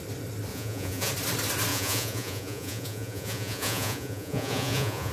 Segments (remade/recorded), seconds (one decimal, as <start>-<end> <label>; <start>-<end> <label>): 0.0-0.5 recorded; 0.5-1.1 remade; 1.1-1.7 recorded; 1.7-5.1 remade